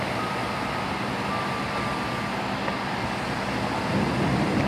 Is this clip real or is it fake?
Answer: real